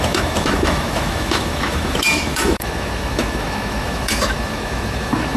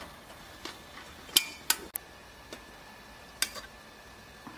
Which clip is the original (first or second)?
second